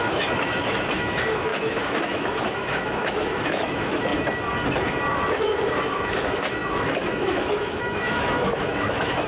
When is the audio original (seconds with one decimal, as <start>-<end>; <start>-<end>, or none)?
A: 4.1-5.1

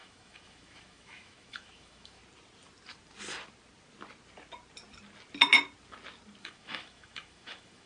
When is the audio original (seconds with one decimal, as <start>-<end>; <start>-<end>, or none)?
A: 2.2-6.4

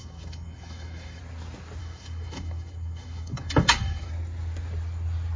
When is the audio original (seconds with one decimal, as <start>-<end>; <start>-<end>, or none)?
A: 1.2-1.8; 4.1-5.4

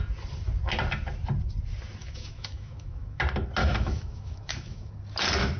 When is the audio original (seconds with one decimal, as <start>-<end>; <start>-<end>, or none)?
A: 0.0-2.0; 3.2-3.6; 4.9-5.6